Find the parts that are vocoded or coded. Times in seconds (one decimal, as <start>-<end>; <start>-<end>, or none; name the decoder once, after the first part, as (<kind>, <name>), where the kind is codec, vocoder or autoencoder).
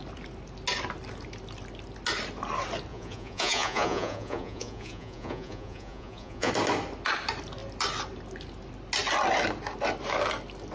2.9-6.5 (vocoder, Vocos)